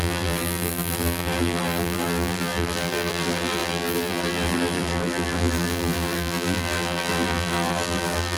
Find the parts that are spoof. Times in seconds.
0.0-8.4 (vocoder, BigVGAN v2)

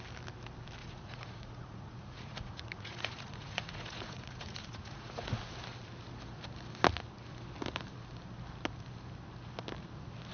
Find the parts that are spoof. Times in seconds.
0.8-5.4 (vocoder, Vocos)

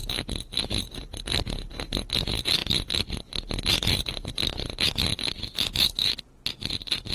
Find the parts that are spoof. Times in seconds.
none

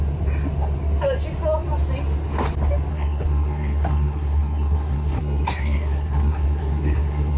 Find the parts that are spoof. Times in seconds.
2.9-7.4 (codec, SNAC)

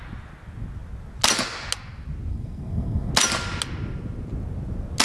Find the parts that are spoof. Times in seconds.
2.3-3.1 (codec, SNAC)